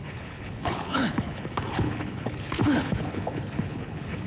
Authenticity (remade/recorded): remade